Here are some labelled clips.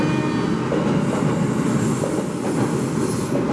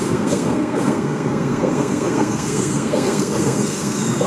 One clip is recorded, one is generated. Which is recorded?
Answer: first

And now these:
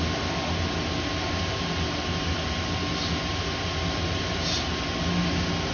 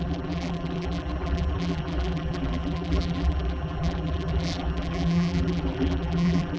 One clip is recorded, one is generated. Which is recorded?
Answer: first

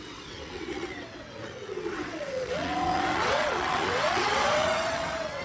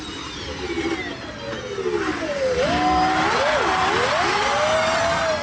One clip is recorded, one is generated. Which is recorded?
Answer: second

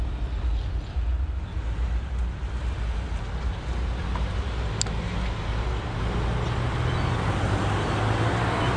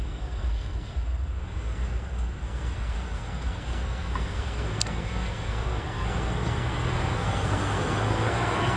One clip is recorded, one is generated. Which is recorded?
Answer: first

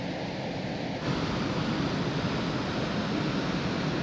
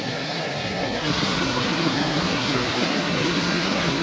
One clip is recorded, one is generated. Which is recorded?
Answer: first